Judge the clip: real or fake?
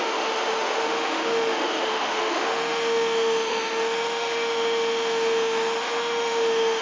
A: fake